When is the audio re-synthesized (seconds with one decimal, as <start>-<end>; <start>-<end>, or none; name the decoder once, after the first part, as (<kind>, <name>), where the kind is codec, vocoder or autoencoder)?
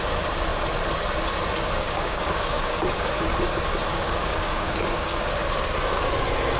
1.8-3.3 (codec, DAC); 3.9-5.3